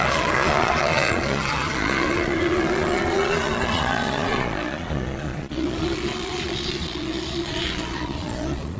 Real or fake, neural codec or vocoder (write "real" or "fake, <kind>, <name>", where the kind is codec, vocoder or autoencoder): fake, vocoder, Vocos